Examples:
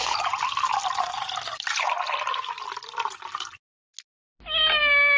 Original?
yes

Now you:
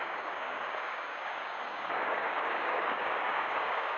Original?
no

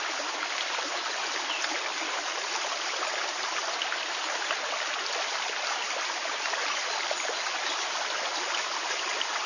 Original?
yes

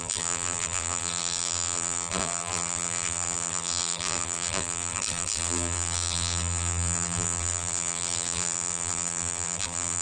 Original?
no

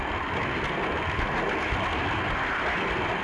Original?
yes